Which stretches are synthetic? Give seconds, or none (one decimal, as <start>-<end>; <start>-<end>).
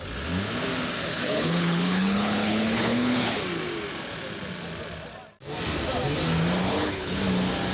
1.1-3.4; 6.6-7.2